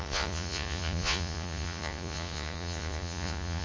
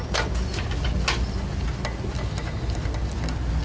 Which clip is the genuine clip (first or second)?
second